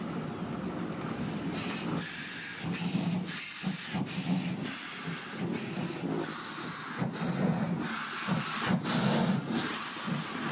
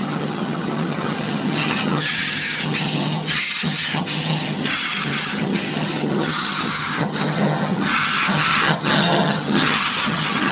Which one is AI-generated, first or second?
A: second